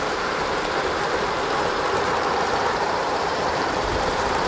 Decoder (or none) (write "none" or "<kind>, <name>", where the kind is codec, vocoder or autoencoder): vocoder, BigVGAN v2